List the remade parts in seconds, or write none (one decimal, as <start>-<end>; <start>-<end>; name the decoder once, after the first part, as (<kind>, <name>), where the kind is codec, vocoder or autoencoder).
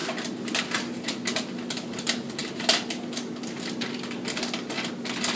none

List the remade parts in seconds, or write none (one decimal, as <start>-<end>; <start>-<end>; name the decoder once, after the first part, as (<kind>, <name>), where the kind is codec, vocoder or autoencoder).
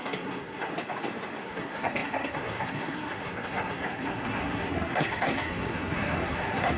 0.0-0.7 (codec, SNAC); 1.4-6.8